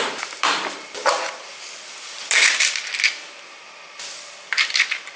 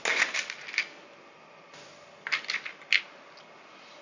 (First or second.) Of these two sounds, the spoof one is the first